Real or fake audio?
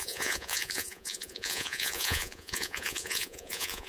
fake